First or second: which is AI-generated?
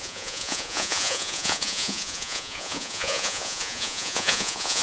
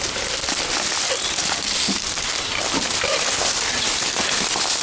first